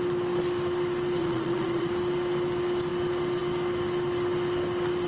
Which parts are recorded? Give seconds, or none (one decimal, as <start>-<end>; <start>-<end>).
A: 0.0-1.2; 1.9-5.1